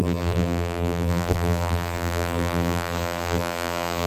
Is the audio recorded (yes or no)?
no